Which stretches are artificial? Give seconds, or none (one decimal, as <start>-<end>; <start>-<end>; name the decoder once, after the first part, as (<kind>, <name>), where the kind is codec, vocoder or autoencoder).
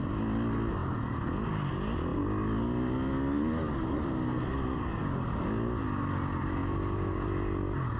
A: none